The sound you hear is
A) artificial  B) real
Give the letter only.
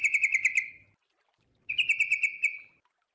B